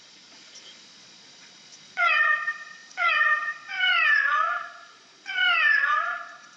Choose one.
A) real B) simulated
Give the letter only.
B